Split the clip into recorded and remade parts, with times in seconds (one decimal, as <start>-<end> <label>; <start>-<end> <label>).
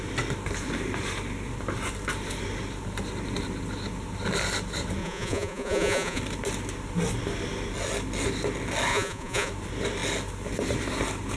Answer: 0.0-5.0 recorded; 5.0-6.2 remade; 6.2-8.9 recorded; 8.9-9.5 remade; 9.5-11.4 recorded